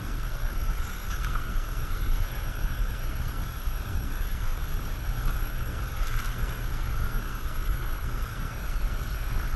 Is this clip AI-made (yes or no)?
yes